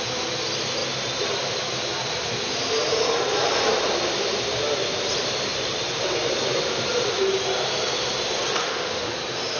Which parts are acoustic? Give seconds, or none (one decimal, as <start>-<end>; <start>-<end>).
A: 0.0-8.6; 9.1-9.6